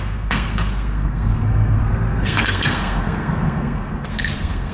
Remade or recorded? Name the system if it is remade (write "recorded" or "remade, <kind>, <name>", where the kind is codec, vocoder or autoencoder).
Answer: remade, codec, SNAC